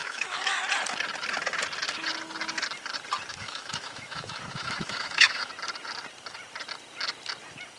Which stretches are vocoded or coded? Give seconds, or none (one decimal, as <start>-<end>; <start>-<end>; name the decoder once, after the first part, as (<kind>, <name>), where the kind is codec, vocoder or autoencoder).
0.0-0.6 (autoencoder, DAC-VAE); 3.3-5.5